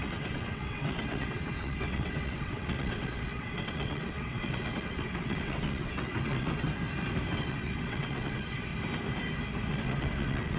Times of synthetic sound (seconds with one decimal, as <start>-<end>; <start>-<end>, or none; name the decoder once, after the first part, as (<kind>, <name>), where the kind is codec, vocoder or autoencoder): 0.0-6.7 (vocoder, WaveNeXt); 7.3-8.7; 9.7-10.6